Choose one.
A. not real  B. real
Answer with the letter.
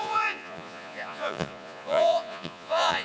A